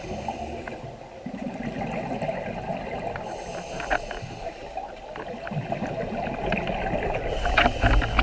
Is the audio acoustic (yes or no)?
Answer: yes